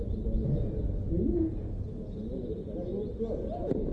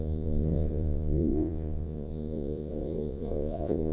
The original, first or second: first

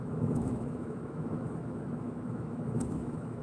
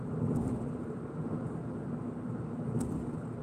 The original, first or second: second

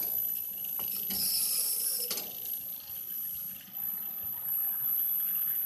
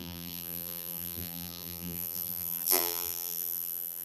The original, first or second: first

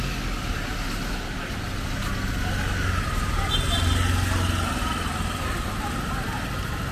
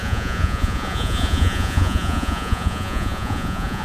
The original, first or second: first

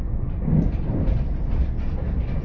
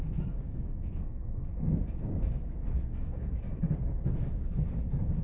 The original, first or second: first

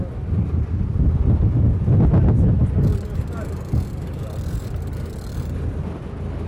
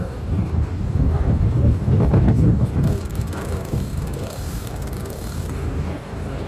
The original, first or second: first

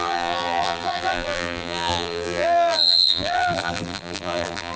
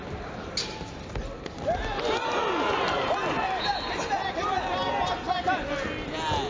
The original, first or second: second